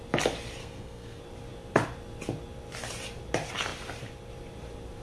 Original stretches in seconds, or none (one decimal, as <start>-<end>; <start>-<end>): 0.0-0.6; 1.2-5.0